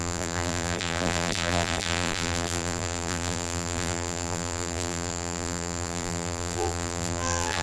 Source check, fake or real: fake